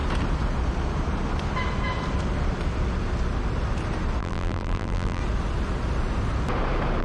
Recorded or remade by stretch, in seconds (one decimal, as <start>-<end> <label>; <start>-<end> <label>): 0.0-4.2 recorded; 4.2-5.2 remade; 5.2-7.0 recorded